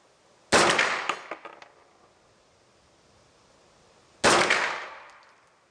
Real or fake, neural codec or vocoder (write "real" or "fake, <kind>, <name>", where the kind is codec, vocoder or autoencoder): real